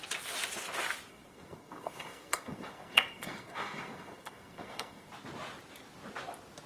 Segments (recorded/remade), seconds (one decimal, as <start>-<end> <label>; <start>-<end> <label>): 0.0-1.1 recorded; 1.1-5.1 remade; 5.1-6.7 recorded

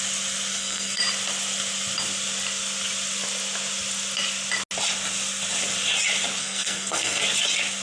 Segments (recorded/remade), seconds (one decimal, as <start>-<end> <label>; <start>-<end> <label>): 0.0-0.5 recorded; 0.5-1.0 remade; 1.0-6.4 recorded; 6.4-7.2 remade; 7.2-7.8 recorded

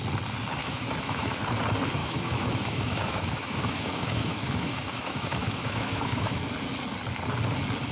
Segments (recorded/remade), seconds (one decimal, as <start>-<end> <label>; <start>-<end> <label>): 0.0-0.6 recorded; 0.6-1.4 remade; 1.4-2.0 recorded; 2.0-6.4 remade; 6.4-7.9 recorded

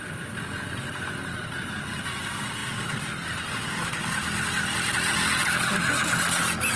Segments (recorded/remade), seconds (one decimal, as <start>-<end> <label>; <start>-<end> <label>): 0.0-6.8 recorded

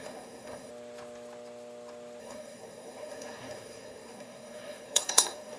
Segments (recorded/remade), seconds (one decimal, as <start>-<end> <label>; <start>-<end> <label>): 0.0-0.7 remade; 0.7-2.2 recorded; 2.2-5.6 remade

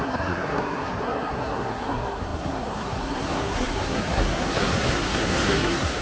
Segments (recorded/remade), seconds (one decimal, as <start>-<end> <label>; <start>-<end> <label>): 0.0-6.0 remade